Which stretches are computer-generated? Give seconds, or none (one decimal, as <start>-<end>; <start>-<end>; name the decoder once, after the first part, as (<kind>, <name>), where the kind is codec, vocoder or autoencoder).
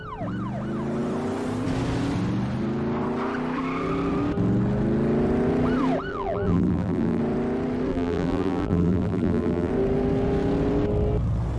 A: 6.1-7.2 (vocoder, BigVGAN v2); 7.9-9.7